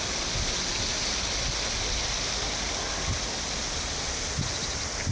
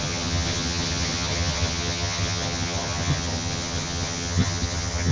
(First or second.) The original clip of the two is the first